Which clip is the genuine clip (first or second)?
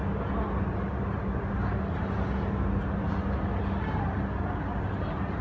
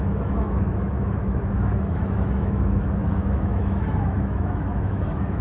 first